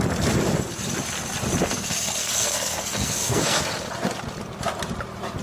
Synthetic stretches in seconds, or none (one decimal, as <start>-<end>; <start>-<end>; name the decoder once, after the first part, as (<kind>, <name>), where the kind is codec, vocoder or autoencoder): 1.7-3.6 (codec, SNAC)